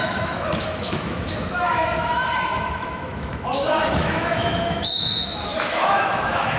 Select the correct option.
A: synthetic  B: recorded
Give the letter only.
A